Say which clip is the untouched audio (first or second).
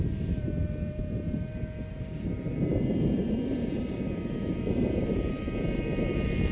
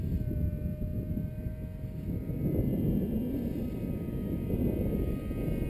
second